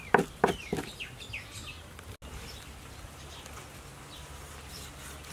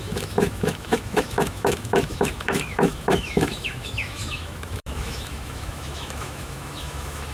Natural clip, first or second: first